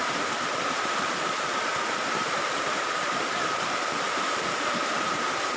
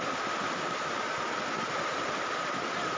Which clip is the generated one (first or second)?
first